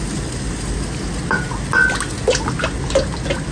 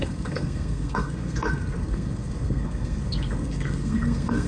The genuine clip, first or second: first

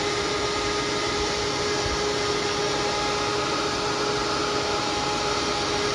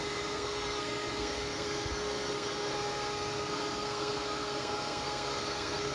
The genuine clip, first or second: first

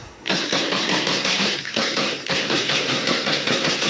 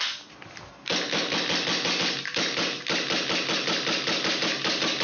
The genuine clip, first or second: second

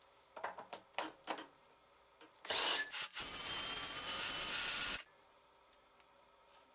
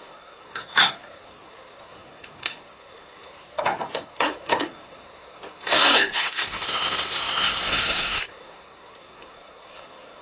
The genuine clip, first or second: first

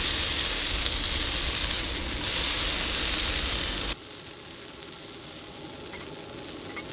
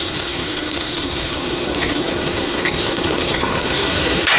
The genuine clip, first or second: first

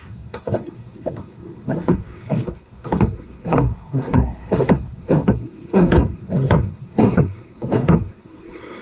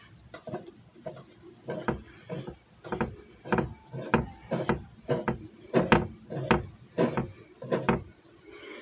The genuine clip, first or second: second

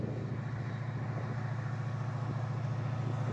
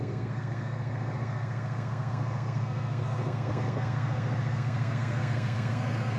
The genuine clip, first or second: first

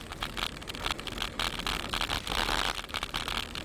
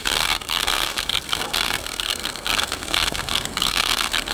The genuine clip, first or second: first